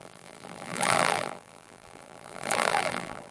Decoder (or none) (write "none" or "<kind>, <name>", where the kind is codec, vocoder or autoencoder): vocoder, BigVGAN v2